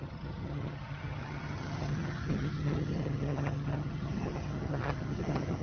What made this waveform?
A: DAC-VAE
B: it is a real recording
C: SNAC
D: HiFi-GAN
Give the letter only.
D